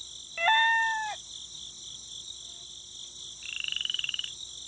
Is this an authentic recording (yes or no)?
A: yes